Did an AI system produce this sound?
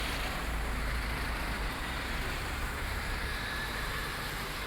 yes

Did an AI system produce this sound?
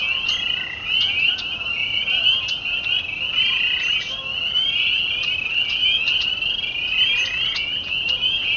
no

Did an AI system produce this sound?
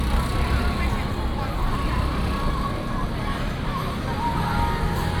no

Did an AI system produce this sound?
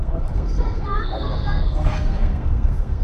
yes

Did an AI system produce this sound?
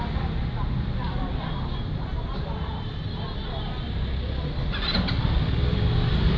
no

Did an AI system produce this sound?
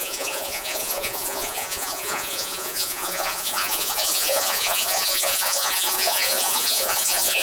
yes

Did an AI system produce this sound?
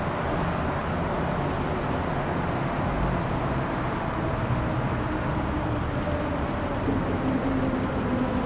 no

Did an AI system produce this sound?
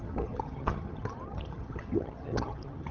yes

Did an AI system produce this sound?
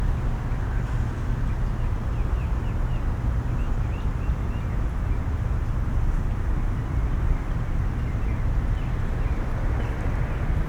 no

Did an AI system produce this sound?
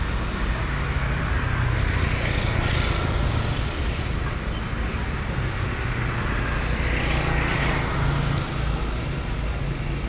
no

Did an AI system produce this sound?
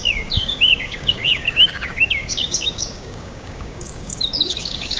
yes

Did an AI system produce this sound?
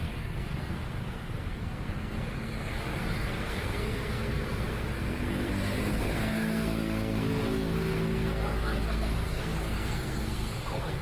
yes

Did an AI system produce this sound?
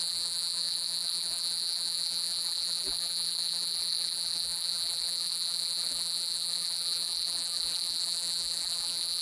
yes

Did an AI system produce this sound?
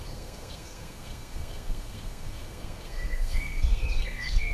yes